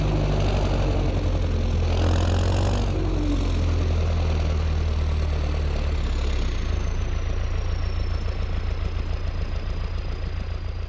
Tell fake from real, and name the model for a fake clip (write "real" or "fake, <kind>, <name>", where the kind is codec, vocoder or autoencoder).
real